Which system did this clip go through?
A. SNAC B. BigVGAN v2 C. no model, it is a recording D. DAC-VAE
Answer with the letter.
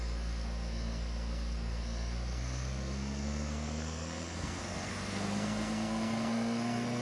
A